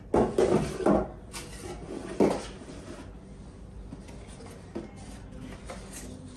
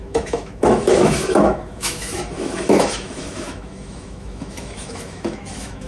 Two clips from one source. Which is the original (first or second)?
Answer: first